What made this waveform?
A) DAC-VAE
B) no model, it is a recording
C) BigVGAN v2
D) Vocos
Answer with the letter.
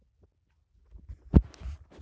B